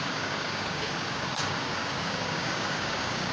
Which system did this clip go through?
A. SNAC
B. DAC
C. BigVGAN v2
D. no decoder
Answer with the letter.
B